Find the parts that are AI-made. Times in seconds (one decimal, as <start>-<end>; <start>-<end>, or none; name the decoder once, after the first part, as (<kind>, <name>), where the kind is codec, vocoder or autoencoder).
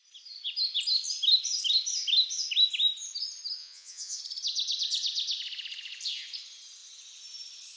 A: 3.6-4.2 (vocoder, Vocos)